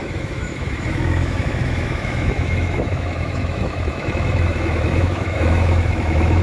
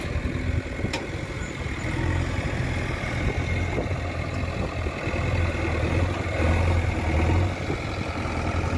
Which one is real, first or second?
second